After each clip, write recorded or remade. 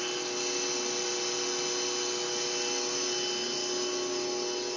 recorded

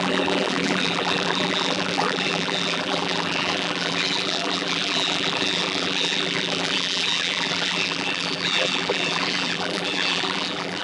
remade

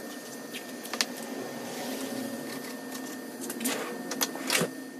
recorded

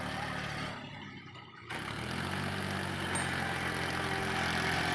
recorded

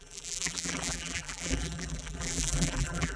remade